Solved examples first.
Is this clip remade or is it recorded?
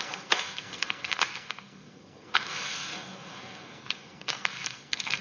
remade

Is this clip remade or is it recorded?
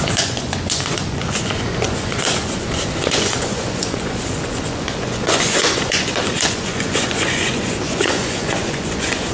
remade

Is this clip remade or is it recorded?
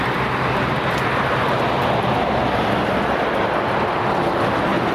recorded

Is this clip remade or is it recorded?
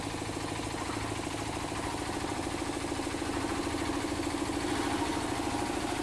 recorded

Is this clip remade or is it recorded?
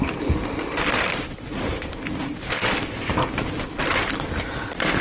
recorded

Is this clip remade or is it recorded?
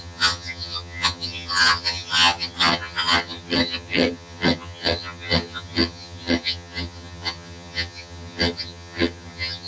remade